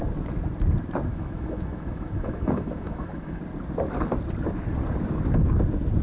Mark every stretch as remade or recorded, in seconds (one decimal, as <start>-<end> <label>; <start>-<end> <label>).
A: 0.0-1.1 recorded; 1.1-3.4 remade; 3.4-6.0 recorded